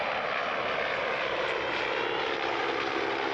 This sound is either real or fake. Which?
real